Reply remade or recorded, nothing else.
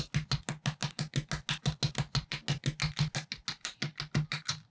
recorded